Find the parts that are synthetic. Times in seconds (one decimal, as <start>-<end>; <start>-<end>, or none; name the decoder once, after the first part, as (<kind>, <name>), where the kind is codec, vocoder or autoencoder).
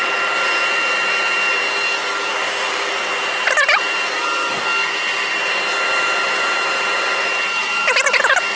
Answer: 2.2-2.9 (codec, DAC)